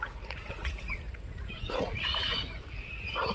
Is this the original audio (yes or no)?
no